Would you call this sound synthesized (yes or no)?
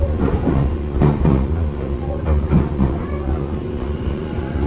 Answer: yes